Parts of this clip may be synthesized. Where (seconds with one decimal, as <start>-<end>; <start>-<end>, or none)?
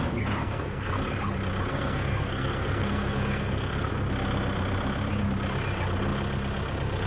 0.4-1.0; 1.7-3.9